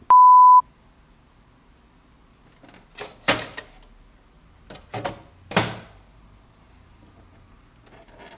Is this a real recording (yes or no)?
yes